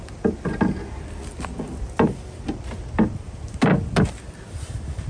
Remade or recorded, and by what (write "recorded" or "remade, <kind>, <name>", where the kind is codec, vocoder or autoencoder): recorded